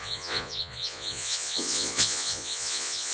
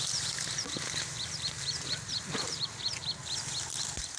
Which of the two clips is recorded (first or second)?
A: second